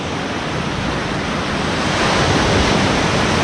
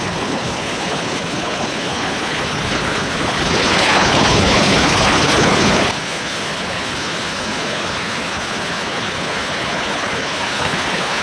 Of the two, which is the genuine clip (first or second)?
first